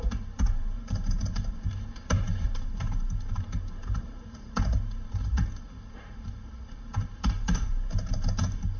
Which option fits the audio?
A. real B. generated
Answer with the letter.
B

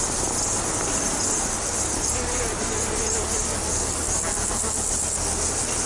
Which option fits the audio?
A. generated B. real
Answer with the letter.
B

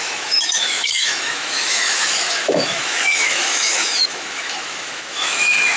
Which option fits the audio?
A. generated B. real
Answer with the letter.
A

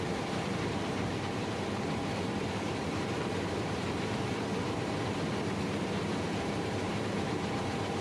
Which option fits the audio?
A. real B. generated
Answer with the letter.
B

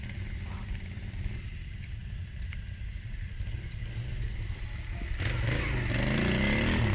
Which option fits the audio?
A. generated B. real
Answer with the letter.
B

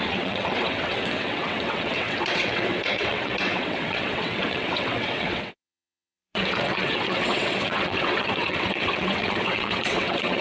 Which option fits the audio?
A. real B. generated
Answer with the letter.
B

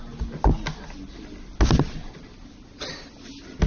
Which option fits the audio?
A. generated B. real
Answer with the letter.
B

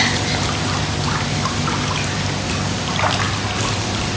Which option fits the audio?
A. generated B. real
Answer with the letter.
B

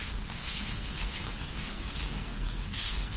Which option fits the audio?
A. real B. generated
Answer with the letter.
B